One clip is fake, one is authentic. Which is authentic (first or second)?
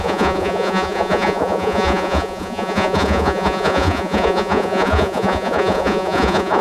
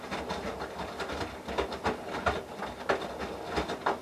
second